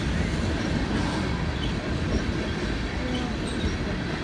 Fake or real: real